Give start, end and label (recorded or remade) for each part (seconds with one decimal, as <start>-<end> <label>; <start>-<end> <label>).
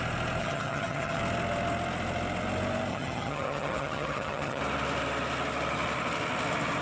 0.0-0.4 recorded; 0.4-1.2 remade; 1.2-2.9 recorded; 2.9-4.6 remade; 4.6-6.8 recorded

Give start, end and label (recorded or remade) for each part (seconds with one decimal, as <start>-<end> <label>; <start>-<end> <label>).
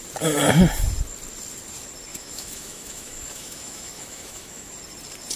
0.0-2.1 recorded; 2.1-4.7 remade; 4.7-5.4 recorded